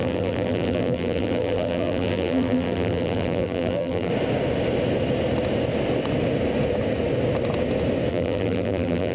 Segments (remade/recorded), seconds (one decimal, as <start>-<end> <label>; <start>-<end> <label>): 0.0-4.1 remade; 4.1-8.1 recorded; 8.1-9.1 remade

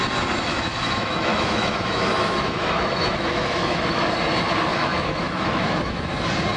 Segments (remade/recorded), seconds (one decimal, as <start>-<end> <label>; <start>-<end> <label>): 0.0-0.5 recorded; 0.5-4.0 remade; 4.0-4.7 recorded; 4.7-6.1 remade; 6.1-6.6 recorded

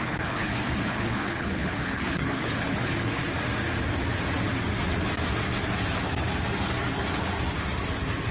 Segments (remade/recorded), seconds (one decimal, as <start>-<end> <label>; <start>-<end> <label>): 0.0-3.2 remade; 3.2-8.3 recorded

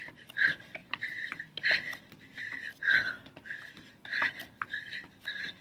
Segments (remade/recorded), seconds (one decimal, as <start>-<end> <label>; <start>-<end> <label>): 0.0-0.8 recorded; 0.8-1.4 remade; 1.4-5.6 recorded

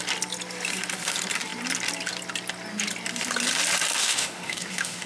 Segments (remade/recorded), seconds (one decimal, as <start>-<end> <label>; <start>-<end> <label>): 0.0-4.0 recorded; 4.0-5.1 remade

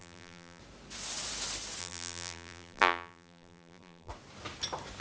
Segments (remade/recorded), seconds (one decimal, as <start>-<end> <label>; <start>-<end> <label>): 0.0-0.6 remade; 0.6-1.8 recorded; 1.8-4.1 remade; 4.1-5.0 recorded

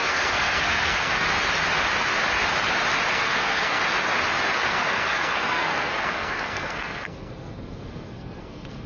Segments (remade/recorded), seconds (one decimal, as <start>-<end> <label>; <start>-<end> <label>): 0.0-1.3 remade; 1.3-3.1 recorded; 3.1-3.8 remade; 3.8-4.7 recorded; 4.7-8.9 remade